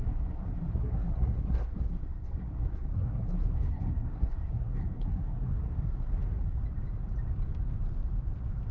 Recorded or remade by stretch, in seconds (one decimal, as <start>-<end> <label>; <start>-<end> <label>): 0.0-6.6 remade; 6.6-8.7 recorded